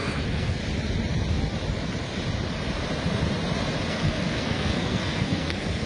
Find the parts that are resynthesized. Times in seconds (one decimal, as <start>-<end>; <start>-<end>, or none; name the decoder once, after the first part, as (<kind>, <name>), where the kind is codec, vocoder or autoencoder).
0.0-0.6 (codec, SNAC); 3.9-5.9